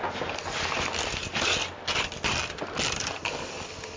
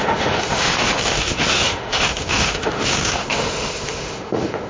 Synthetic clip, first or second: second